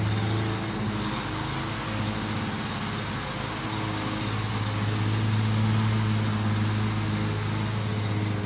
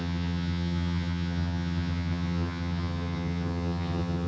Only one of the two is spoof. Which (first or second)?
second